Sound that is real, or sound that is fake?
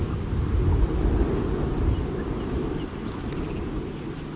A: real